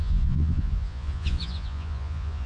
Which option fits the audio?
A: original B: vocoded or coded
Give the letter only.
B